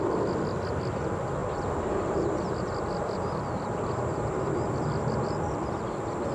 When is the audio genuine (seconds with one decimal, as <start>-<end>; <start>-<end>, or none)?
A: 0.0-1.4; 5.2-6.3